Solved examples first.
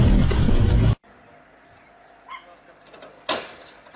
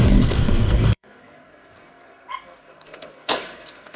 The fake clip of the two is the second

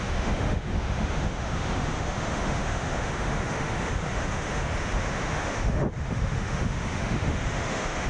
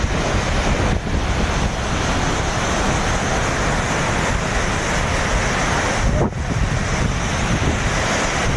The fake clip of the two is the first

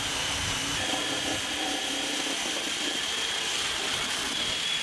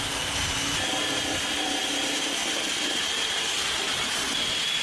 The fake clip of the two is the first